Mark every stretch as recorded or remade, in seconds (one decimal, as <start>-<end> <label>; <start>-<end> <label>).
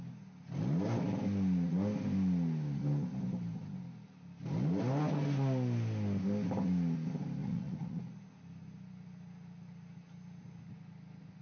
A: 0.0-7.4 recorded; 7.4-8.0 remade; 8.0-11.4 recorded